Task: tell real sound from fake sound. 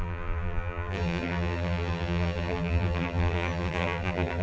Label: fake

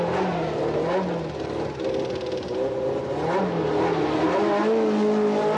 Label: real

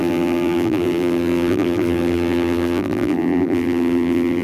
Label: fake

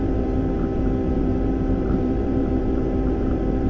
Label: fake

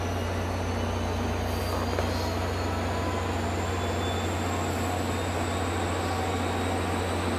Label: real